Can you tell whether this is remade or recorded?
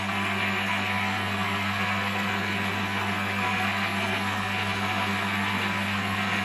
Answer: remade